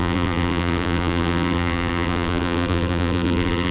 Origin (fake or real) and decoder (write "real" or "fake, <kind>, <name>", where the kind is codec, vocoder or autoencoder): fake, vocoder, BigVGAN v2